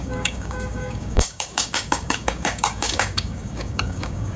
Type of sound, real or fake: fake